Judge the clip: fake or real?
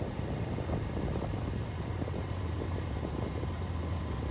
real